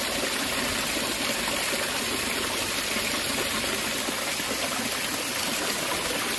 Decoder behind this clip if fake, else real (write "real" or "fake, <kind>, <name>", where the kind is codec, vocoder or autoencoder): real